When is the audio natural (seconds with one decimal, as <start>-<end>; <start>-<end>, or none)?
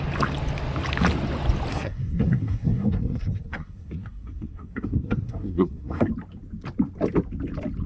0.0-1.7; 6.1-7.9